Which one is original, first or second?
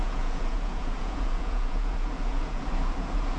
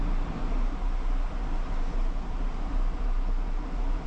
second